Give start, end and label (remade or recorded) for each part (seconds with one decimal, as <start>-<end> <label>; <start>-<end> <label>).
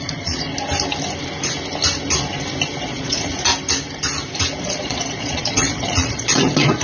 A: 0.0-0.5 remade; 0.5-2.8 recorded; 2.8-3.5 remade; 3.5-4.6 recorded; 4.6-6.8 remade